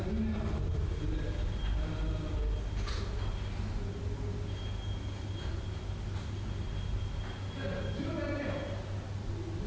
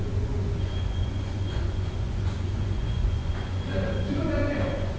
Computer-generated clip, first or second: second